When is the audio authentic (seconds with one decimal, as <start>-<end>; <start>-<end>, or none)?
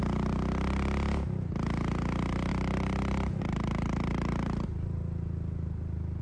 0.0-2.5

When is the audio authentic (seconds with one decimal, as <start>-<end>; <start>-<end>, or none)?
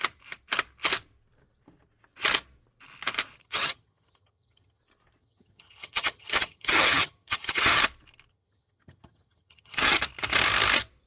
0.0-3.4; 4.8-5.2; 7.8-8.3; 10.0-11.1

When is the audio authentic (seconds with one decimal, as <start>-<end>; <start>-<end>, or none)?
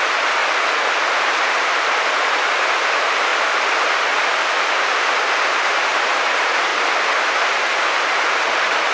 0.4-1.1; 3.3-4.7; 6.7-7.9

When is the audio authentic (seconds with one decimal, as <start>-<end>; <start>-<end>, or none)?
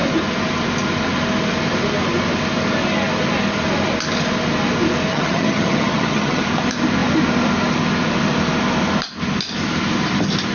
0.0-5.1; 6.4-10.5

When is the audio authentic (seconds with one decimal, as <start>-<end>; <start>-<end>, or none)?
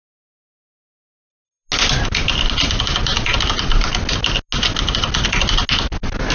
0.0-6.3